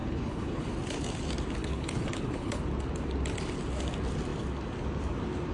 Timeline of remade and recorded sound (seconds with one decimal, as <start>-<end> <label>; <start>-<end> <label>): 0.0-0.7 remade; 0.7-1.6 recorded; 1.6-2.6 remade; 2.6-5.5 recorded